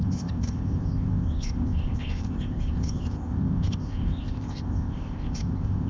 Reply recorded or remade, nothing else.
remade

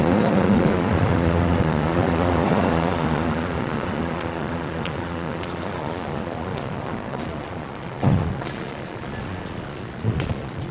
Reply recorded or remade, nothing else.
remade